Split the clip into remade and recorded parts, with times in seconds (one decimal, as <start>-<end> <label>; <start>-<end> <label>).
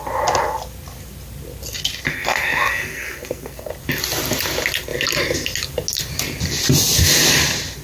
0.0-2.1 recorded; 2.1-3.7 remade; 3.7-7.8 recorded